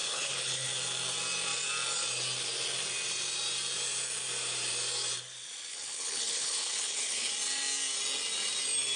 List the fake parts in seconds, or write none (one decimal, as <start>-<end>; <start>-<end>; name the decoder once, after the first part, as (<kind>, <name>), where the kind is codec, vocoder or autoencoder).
0.0-0.7 (codec, HILCodec); 5.7-7.3